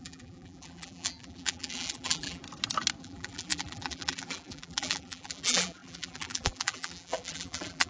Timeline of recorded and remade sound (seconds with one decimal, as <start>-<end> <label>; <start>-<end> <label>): 0.0-2.4 remade; 2.4-3.0 recorded; 3.0-7.9 remade